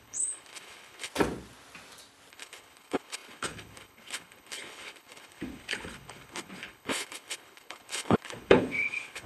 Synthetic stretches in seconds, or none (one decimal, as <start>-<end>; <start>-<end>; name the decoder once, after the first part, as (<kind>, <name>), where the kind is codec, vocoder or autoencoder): 0.0-1.1 (codec, HILCodec); 2.3-9.3